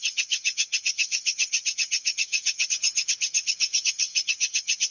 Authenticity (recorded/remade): remade